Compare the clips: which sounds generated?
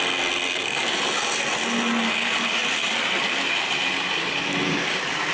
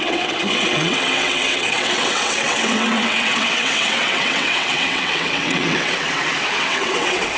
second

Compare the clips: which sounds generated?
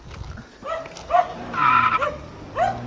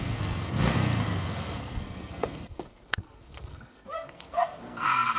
second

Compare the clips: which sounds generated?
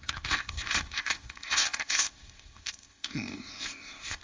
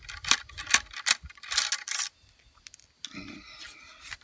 first